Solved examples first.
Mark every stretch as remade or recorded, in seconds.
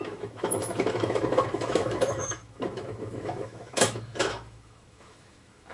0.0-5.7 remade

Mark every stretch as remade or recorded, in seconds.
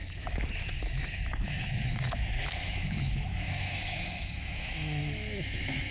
0.0-5.9 remade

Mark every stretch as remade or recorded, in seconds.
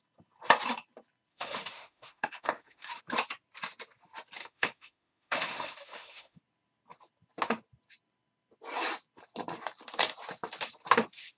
0.0-1.3 recorded; 1.3-3.0 remade; 3.0-4.4 recorded; 4.4-6.4 remade; 6.4-11.4 recorded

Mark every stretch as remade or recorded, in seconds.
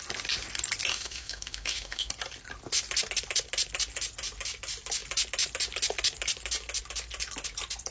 0.0-0.9 recorded; 0.9-2.1 remade; 2.1-7.9 recorded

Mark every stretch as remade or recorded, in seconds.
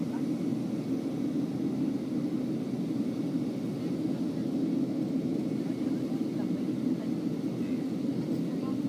0.0-8.9 recorded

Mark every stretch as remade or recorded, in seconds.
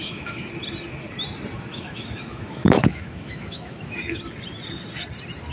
0.0-0.5 remade; 0.5-1.7 recorded; 1.7-4.2 remade; 4.2-5.5 recorded